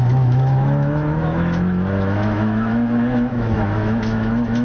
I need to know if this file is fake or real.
fake